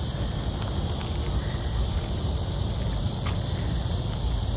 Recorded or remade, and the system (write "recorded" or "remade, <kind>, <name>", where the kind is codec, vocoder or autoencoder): recorded